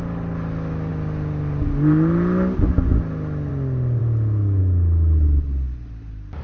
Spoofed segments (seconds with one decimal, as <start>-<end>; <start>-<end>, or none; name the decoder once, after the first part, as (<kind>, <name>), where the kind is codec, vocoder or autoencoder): none